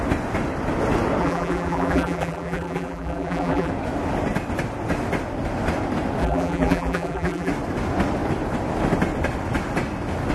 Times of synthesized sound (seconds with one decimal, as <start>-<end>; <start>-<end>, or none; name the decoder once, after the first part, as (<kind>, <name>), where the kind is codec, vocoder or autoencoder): 1.2-3.7 (vocoder, BigVGAN v2); 6.2-7.5

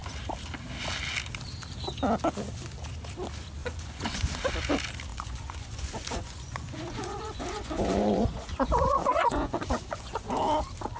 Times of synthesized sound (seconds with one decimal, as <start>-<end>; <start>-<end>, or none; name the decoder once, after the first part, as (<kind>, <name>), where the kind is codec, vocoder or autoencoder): 3.6-4.3 (vocoder, Vocos); 5.1-10.4

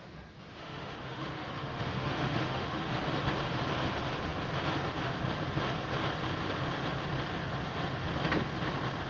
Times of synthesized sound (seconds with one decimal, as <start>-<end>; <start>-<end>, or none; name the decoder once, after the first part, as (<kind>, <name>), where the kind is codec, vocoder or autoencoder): 0.6-3.0 (autoencoder, DAC-VAE)

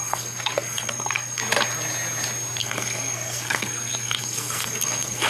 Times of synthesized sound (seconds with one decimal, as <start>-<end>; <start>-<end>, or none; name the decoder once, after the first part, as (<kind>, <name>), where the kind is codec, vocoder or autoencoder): 0.0-1.4 (codec, SNAC); 2.6-5.3

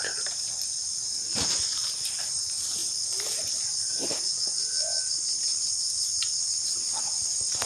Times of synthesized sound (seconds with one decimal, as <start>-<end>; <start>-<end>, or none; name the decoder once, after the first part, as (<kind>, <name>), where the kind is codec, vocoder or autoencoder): 1.8-2.4 (vocoder, BigVGAN v2); 2.8-3.4

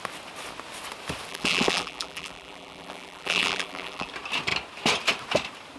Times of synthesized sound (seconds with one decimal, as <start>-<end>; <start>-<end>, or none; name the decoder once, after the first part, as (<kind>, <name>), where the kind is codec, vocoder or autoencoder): 1.3-4.1 (vocoder, BigVGAN v2)

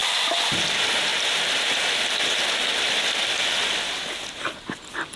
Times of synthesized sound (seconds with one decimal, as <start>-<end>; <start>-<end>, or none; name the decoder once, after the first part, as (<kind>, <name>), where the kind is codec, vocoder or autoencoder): 0.0-0.5 (vocoder, BigVGAN v2); 1.1-2.0